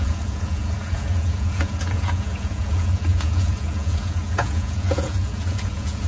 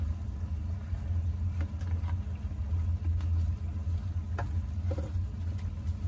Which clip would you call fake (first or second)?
first